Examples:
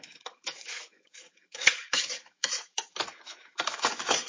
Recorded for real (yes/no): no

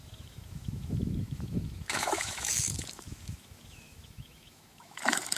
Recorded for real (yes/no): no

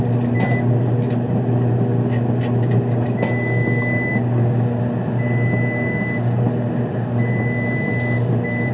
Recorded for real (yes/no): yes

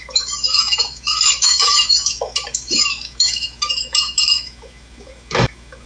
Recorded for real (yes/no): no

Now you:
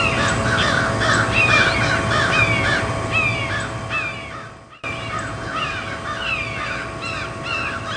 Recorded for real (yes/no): yes